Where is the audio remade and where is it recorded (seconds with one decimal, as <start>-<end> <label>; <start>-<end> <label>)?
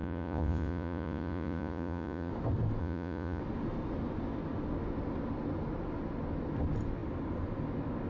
0.0-2.3 remade; 2.3-2.8 recorded; 2.8-3.4 remade; 3.4-8.1 recorded